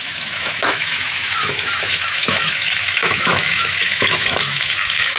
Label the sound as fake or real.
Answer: fake